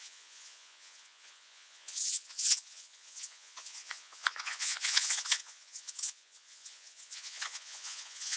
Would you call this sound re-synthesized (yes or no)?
yes